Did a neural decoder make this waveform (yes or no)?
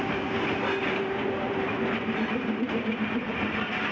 no